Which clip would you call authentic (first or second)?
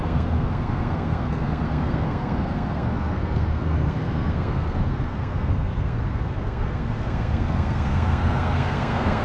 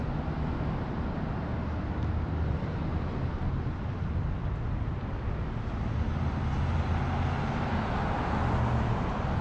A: second